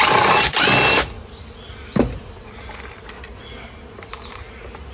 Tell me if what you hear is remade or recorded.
recorded